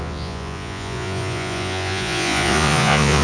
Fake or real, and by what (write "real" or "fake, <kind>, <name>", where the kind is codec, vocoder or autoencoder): fake, vocoder, Vocos